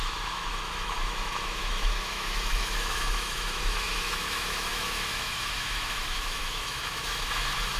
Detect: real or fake fake